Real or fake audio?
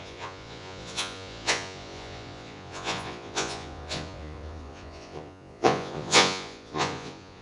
fake